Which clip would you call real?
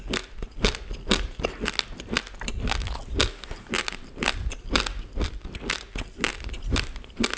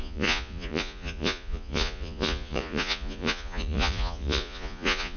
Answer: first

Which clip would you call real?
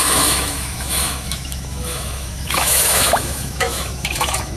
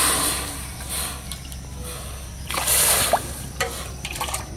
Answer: second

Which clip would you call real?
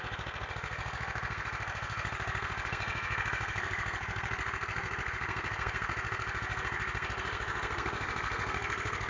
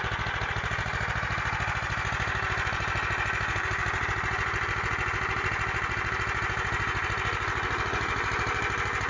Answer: second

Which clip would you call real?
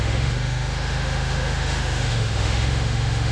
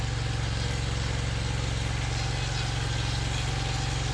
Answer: second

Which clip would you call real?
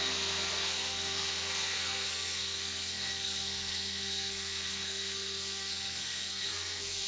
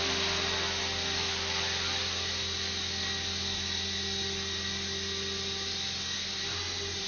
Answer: second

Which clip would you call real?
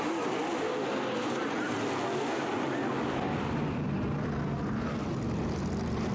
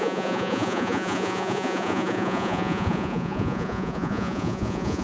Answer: first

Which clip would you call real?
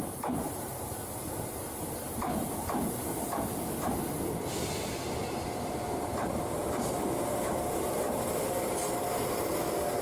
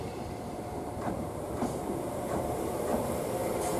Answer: first